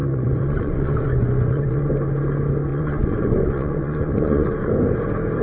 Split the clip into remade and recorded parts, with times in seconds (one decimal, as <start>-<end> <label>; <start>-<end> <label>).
0.0-1.9 remade; 1.9-2.7 recorded; 2.7-4.7 remade; 4.7-5.4 recorded